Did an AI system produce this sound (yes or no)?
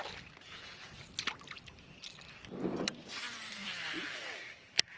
yes